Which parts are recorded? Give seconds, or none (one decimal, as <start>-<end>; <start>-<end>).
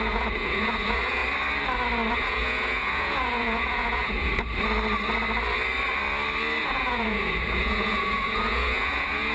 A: 1.2-2.1; 4.3-6.6